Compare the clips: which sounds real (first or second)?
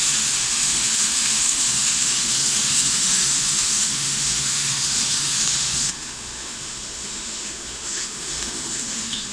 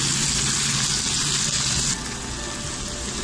second